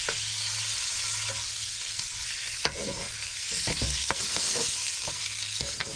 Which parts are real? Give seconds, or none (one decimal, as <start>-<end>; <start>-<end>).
0.4-1.3